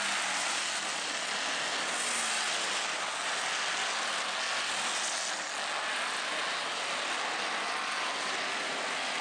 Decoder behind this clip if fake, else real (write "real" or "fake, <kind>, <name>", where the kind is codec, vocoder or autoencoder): real